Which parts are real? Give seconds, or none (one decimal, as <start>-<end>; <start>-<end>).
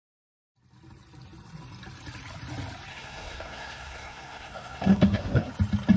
0.0-2.9; 5.5-6.0